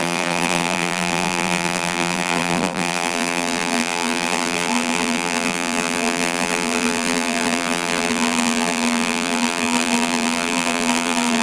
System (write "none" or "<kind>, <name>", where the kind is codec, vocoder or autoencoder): vocoder, BigVGAN v2